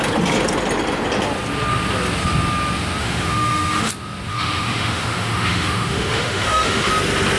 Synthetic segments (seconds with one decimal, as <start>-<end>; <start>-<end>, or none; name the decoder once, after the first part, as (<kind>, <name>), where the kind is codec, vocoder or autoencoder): 3.0-3.9 (autoencoder, DAC-VAE); 4.3-6.9